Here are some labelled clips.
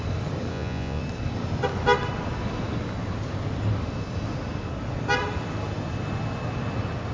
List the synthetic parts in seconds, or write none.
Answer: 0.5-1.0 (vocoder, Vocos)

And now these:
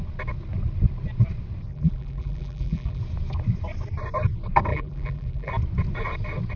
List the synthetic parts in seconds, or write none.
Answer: 1.7-3.0 (vocoder, BigVGAN v2); 4.7-5.5

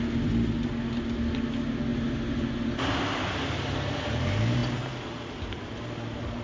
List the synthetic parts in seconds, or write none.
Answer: 1.9-3.4 (vocoder, BigVGAN v2); 4.6-5.8